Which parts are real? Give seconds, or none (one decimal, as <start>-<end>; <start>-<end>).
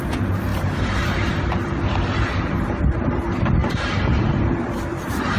none